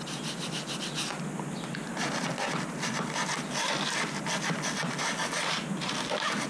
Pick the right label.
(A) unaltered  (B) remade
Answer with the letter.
A